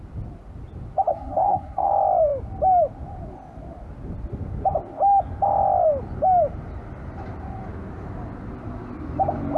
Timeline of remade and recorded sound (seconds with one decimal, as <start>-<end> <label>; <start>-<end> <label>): 0.0-1.1 recorded; 1.1-1.9 remade; 1.9-9.6 recorded